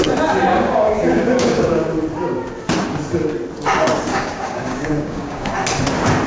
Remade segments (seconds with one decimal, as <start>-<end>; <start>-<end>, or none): 0.5-1.9; 4.1-5.5